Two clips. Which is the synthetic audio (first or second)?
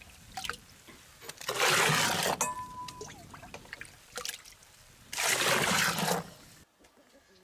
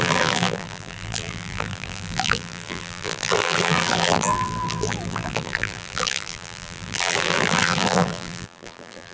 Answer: second